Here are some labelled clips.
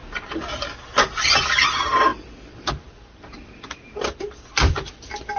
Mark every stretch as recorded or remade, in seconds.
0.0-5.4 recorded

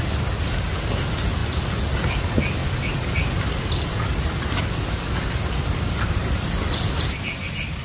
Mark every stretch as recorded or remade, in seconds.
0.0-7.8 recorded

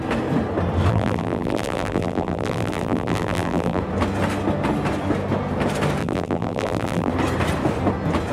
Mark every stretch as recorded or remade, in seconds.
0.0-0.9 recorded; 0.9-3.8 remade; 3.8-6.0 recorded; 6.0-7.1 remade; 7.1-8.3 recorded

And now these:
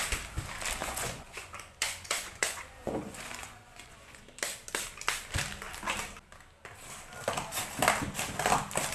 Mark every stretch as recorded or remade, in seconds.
0.0-0.8 recorded; 0.8-4.2 remade; 4.2-8.9 recorded

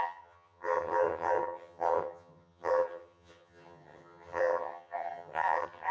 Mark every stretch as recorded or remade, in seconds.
0.0-5.9 remade

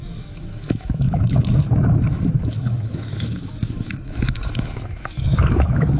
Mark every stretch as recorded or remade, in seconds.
0.0-6.0 remade